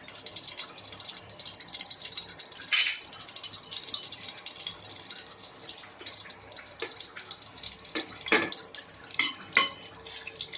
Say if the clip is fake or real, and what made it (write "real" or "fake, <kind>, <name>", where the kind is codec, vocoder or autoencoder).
fake, vocoder, BigVGAN v2